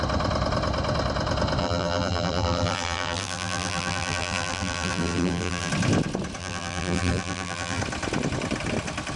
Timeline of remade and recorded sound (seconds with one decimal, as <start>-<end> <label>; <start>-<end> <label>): 0.0-1.6 recorded; 1.6-5.7 remade; 5.7-6.4 recorded; 6.4-7.8 remade; 7.8-9.2 recorded